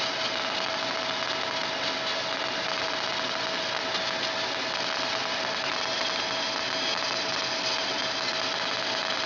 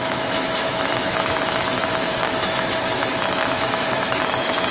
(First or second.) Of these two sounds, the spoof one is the second